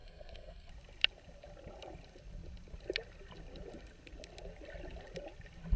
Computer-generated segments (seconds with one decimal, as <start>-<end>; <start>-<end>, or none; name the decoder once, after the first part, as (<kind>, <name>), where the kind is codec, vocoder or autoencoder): 0.0-0.7 (codec, SNAC)